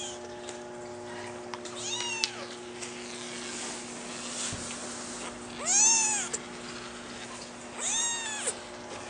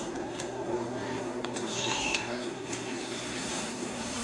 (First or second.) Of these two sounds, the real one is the first